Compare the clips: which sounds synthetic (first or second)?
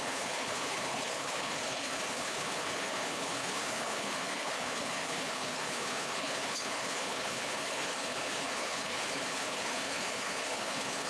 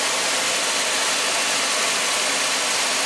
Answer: first